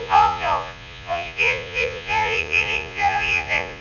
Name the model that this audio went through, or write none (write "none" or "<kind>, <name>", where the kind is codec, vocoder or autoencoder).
vocoder, Vocos